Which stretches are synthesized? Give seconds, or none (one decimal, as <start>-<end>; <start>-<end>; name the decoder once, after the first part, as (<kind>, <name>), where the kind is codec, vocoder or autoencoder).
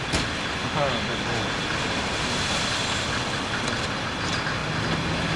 none